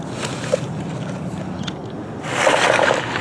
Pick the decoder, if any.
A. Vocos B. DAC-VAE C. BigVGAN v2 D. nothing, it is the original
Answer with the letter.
D